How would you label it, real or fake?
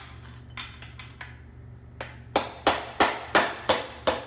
real